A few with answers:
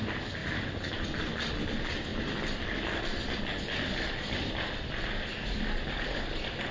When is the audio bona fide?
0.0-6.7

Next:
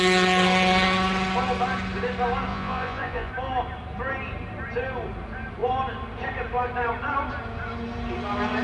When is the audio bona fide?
0.0-2.5; 3.3-8.6

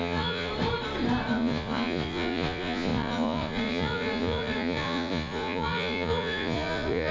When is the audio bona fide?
0.5-1.3